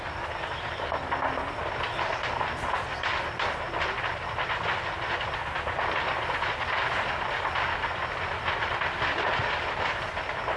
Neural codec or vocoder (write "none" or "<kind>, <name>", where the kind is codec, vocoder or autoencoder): none